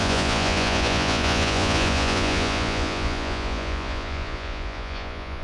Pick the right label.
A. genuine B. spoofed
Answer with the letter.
B